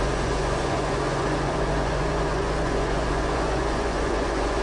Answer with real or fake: fake